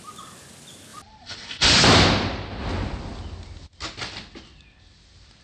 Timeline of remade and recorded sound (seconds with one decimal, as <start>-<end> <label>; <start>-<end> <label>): 0.0-0.9 recorded; 0.9-1.8 remade; 1.8-5.4 recorded